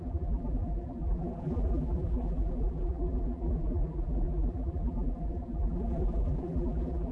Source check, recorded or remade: remade